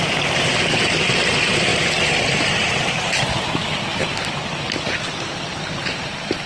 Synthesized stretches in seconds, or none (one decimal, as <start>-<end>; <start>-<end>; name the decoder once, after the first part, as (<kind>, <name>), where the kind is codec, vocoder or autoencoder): 1.7-3.4 (vocoder, BigVGAN v2)